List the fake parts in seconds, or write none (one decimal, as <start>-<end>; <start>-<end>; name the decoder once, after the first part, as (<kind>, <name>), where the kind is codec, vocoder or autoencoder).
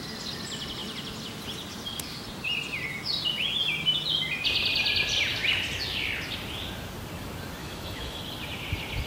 7.6-8.2 (autoencoder, DAC-VAE)